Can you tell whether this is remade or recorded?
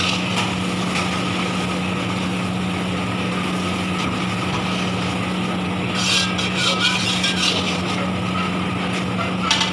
recorded